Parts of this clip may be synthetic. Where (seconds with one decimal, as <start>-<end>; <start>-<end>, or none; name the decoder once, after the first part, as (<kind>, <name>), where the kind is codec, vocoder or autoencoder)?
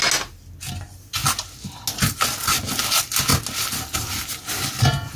none